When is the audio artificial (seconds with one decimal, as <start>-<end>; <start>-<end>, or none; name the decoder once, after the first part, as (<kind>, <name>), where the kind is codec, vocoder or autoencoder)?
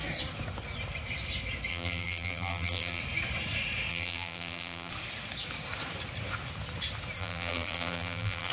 1.7-3.0 (vocoder, BigVGAN v2); 3.9-4.9; 7.2-8.5